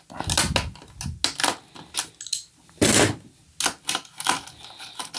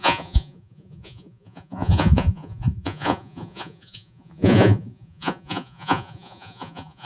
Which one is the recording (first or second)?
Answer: first